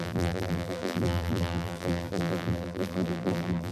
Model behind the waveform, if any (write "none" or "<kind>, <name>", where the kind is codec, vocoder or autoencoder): vocoder, BigVGAN v2